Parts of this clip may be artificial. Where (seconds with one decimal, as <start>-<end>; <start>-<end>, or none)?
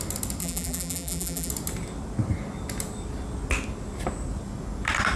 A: 0.4-1.5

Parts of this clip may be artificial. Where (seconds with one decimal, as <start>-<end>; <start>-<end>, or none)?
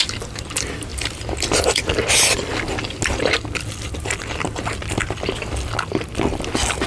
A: 0.9-1.9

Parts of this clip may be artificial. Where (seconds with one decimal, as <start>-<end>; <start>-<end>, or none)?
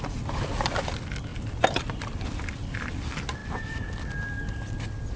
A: 1.3-2.2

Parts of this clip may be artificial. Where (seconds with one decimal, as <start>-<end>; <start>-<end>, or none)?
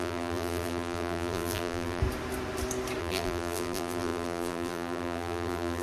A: 0.0-2.0; 3.0-5.8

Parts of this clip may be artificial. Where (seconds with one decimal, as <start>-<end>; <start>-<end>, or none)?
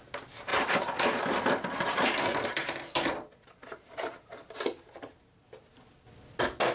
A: 2.6-5.5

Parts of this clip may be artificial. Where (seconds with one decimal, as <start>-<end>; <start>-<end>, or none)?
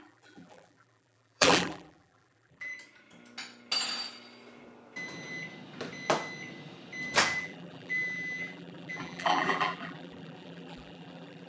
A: 0.0-2.7; 7.4-11.5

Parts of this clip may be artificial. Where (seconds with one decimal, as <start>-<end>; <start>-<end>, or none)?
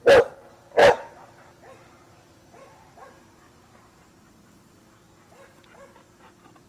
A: 0.8-4.3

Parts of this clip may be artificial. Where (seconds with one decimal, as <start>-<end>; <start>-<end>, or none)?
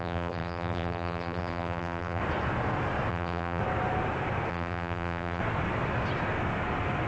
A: 0.0-2.2; 3.1-3.6; 4.5-5.4